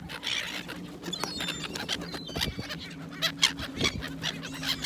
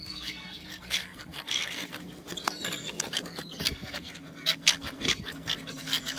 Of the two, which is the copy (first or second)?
second